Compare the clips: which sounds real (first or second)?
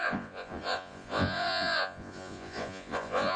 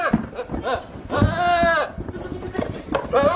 second